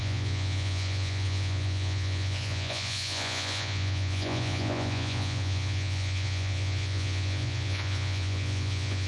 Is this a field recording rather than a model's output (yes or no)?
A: no